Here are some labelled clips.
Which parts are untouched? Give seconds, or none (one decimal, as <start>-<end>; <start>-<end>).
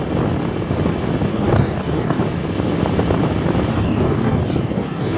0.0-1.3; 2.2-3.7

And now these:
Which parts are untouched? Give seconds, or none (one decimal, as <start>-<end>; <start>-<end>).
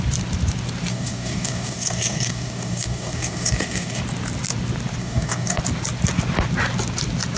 0.0-0.9; 4.0-5.0; 5.6-7.4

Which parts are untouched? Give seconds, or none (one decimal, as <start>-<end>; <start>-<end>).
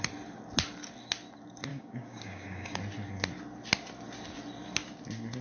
0.0-1.7; 2.8-5.4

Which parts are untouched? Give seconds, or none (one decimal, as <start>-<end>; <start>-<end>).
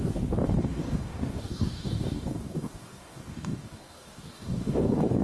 none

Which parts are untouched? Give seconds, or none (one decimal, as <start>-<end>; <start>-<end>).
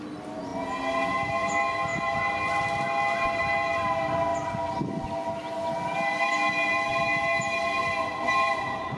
0.0-9.0